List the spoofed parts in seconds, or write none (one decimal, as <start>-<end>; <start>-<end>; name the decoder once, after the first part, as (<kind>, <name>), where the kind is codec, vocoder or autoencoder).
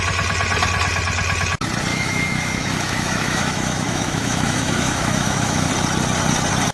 1.9-5.7 (autoencoder, DAC-VAE)